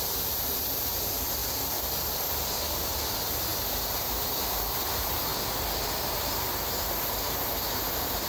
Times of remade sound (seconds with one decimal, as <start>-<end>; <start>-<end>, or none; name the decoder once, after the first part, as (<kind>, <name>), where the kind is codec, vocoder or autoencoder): 0.0-1.4 (vocoder, BigVGAN v2); 2.2-5.3; 7.8-8.3